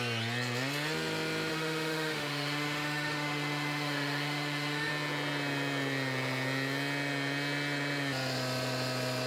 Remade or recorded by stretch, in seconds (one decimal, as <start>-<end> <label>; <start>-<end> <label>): 0.0-1.5 recorded; 1.5-4.9 remade; 4.9-9.3 recorded

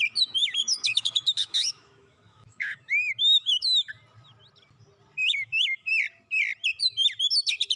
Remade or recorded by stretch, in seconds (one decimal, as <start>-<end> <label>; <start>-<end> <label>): 0.0-0.4 recorded; 0.4-3.9 remade; 3.9-5.2 recorded; 5.2-5.9 remade; 5.9-7.8 recorded

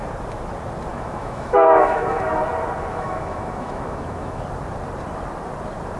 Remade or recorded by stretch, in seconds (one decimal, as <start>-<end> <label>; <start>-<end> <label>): 0.0-0.9 recorded; 0.9-2.3 remade; 2.3-2.9 recorded; 2.9-4.4 remade; 4.4-6.0 recorded

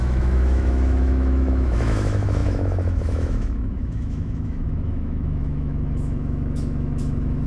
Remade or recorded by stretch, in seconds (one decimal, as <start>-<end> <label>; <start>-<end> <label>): 0.0-7.5 remade

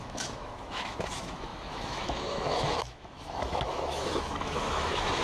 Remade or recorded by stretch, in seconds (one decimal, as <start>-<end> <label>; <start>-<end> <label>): 0.0-5.2 remade

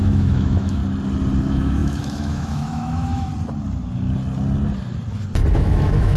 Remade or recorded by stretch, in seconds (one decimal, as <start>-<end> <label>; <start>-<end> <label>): 0.0-0.8 remade; 0.8-1.4 recorded; 1.4-3.3 remade; 3.3-5.5 recorded; 5.5-6.2 remade

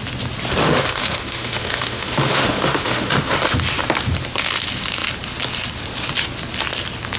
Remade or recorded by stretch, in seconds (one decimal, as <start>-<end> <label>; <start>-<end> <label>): 0.0-0.6 recorded; 0.6-3.1 remade; 3.1-7.2 recorded

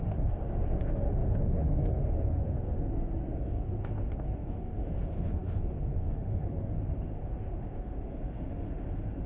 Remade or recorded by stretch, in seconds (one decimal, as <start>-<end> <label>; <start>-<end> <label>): 0.0-9.3 remade